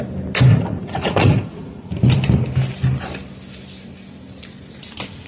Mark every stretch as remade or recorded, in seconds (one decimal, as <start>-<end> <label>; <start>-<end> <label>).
0.0-0.5 recorded; 0.5-1.9 remade; 1.9-5.3 recorded